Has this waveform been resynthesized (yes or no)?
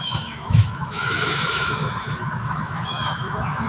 yes